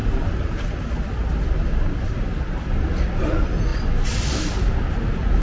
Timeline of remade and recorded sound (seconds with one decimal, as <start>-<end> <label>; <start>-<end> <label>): 0.0-5.4 recorded